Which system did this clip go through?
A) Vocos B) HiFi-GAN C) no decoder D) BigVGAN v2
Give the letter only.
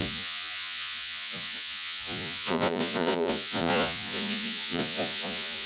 A